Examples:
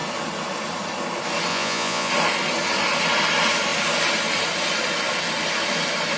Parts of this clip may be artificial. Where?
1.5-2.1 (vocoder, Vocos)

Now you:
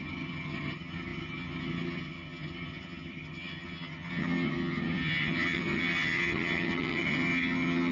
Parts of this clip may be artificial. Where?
0.0-7.9 (vocoder, HiFi-GAN)

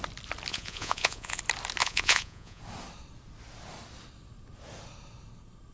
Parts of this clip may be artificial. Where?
0.5-1.4 (vocoder, Vocos); 1.8-2.6

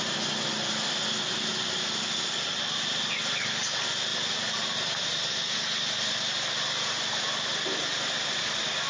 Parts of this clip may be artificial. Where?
none

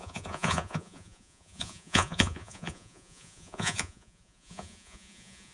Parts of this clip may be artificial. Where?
0.0-5.5 (vocoder, Vocos)

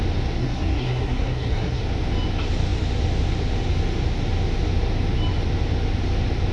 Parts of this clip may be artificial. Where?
0.4-1.8 (codec, SNAC)

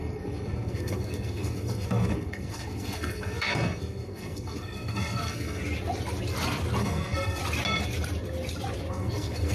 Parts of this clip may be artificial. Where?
0.0-5.6 (codec, SNAC); 6.8-7.4; 8.9-9.5